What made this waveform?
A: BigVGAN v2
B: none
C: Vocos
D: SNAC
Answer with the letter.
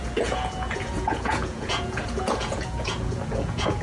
C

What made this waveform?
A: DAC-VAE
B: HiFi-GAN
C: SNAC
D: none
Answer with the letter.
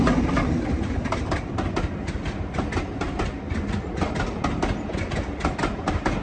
D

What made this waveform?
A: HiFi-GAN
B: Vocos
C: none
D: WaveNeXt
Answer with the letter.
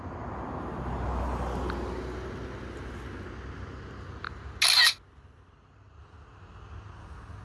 C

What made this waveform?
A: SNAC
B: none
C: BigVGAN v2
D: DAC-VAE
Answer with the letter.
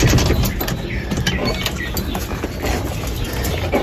B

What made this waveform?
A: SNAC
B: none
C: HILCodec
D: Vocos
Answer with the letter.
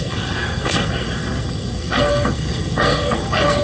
A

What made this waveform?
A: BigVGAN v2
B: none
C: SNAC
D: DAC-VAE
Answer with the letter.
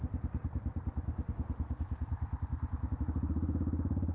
A